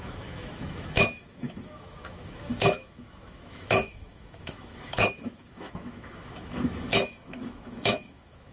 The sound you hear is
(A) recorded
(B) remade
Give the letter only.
B